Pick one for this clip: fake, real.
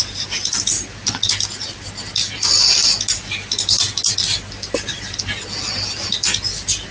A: real